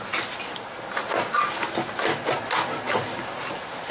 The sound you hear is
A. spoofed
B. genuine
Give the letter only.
B